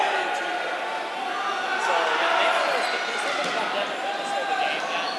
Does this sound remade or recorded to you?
recorded